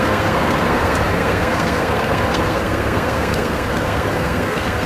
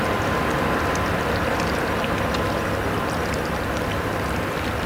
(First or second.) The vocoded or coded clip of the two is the first